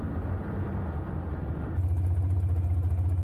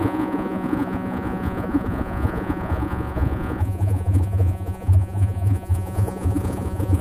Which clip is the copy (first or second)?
second